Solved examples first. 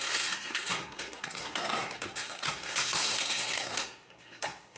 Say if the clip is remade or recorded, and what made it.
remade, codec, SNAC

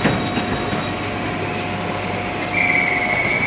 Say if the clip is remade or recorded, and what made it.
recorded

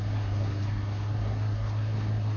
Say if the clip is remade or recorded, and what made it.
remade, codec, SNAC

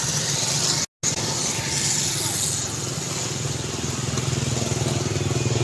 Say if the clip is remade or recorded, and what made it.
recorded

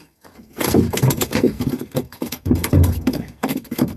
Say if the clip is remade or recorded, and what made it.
remade, codec, SNAC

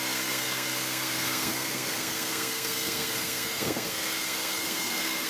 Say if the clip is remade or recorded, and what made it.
remade, codec, SNAC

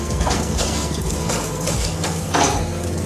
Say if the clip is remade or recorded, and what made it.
remade, codec, SNAC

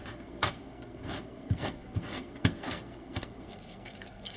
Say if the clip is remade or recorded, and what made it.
remade, codec, SNAC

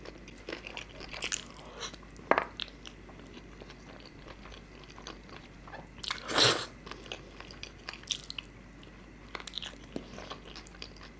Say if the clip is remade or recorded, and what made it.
recorded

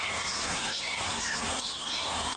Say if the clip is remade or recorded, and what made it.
remade, codec, SNAC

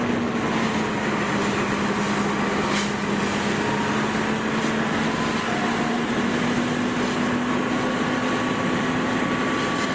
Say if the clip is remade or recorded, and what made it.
recorded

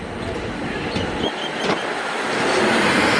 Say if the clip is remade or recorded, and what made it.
recorded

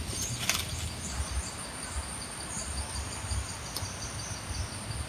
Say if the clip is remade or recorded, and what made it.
recorded